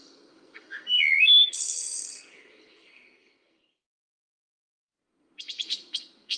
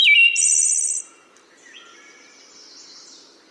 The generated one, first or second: first